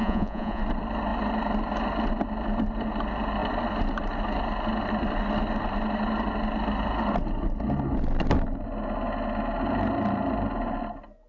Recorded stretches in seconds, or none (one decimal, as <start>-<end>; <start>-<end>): 0.6-11.3